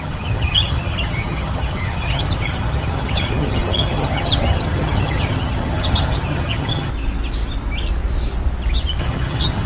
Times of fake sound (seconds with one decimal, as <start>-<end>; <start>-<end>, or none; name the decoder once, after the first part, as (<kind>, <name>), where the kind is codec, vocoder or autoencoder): 0.0-6.9 (vocoder, HiFi-GAN); 9.0-9.7